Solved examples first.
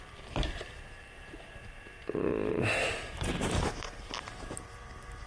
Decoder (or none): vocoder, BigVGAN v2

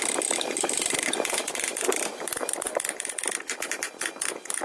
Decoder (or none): vocoder, BigVGAN v2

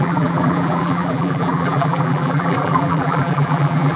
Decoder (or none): vocoder, BigVGAN v2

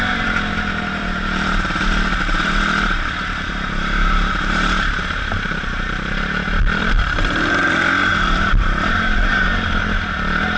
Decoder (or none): vocoder, BigVGAN v2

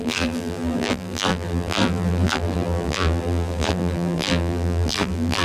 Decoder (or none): vocoder, BigVGAN v2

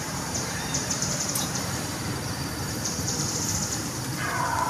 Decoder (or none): vocoder, BigVGAN v2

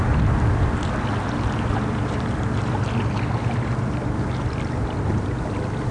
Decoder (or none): none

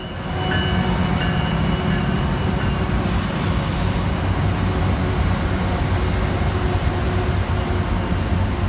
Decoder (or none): none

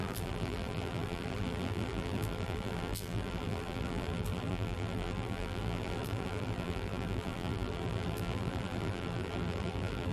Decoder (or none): vocoder, BigVGAN v2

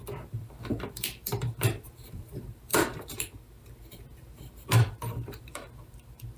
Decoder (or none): vocoder, BigVGAN v2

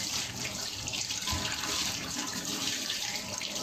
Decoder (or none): vocoder, BigVGAN v2